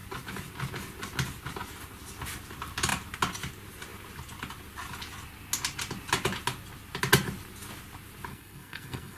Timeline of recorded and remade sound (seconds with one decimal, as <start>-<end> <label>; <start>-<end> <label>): 0.0-8.3 recorded; 8.3-9.2 remade